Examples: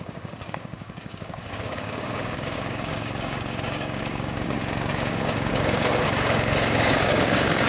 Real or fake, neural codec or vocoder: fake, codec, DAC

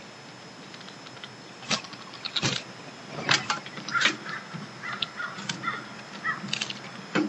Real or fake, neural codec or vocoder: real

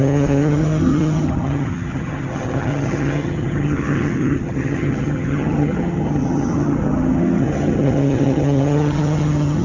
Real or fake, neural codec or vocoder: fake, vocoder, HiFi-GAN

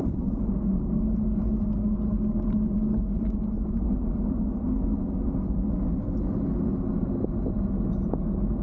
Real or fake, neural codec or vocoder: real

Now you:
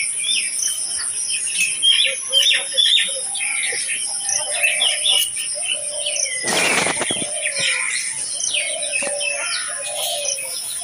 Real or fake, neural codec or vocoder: real